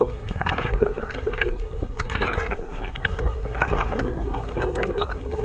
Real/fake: fake